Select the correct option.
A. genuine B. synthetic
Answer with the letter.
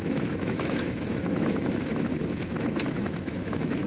B